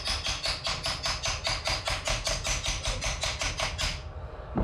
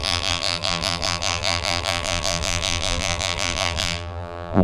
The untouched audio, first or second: first